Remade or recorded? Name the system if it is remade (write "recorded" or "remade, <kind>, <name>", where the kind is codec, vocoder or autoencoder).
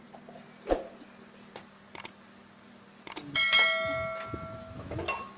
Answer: recorded